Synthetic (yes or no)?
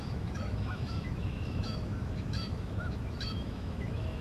yes